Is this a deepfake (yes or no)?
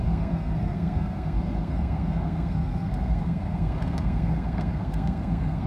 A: yes